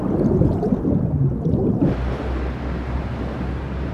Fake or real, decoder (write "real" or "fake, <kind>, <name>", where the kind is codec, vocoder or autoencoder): real